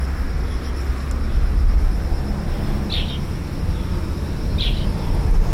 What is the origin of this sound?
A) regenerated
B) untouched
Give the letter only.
B